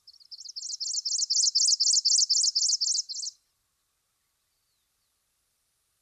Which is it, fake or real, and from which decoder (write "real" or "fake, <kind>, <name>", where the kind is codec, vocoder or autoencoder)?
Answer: real